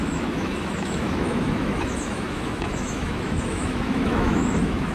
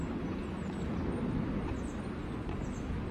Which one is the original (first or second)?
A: second